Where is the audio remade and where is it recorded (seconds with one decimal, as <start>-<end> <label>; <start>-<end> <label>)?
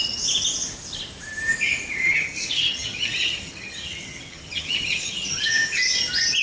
0.0-2.0 recorded; 2.0-5.8 remade; 5.8-6.4 recorded